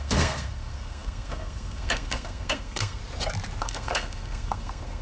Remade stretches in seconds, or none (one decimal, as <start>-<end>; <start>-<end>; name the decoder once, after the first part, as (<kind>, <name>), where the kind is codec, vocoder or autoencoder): 0.0-3.0 (codec, SNAC); 3.6-5.0